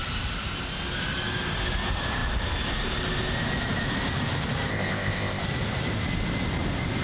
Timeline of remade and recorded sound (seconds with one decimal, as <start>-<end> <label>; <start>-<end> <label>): 0.0-4.7 recorded; 4.7-5.4 remade; 5.4-7.0 recorded

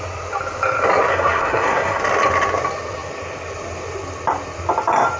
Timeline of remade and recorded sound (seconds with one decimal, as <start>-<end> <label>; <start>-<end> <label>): 0.0-1.1 recorded; 1.1-2.0 remade; 2.0-5.2 recorded

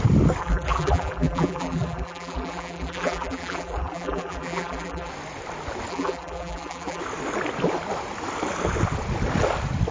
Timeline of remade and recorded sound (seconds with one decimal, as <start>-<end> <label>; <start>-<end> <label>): 0.0-0.4 recorded; 0.4-5.1 remade; 5.1-5.9 recorded; 5.9-7.0 remade; 7.0-9.9 recorded

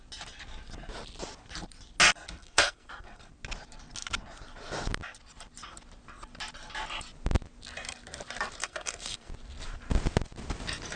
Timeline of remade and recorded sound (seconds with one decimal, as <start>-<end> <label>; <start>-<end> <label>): 0.0-2.4 recorded; 2.4-3.3 remade; 3.3-8.6 recorded; 8.6-9.3 remade; 9.3-11.0 recorded

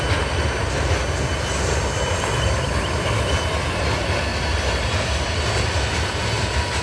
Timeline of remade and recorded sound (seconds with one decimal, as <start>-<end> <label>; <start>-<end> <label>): 0.0-6.8 recorded